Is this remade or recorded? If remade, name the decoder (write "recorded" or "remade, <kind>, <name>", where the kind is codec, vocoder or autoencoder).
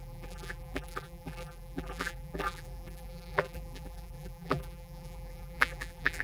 remade, vocoder, BigVGAN v2